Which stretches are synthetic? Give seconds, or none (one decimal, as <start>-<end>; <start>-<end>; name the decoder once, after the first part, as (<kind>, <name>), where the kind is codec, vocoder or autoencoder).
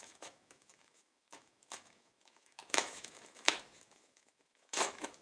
0.0-5.2 (autoencoder, DAC-VAE)